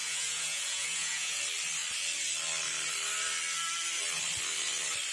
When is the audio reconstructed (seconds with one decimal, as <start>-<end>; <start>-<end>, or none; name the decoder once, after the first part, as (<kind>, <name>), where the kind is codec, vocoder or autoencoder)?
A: 0.0-1.4 (vocoder, Vocos)